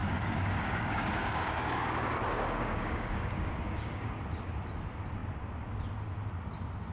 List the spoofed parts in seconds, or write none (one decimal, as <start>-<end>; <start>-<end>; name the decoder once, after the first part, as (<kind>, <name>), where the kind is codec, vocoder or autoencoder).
0.0-4.1 (codec, DAC)

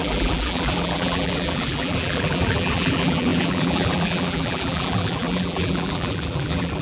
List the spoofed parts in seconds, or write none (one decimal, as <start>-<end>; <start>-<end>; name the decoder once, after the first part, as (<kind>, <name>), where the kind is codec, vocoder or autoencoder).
0.0-6.8 (vocoder, BigVGAN v2)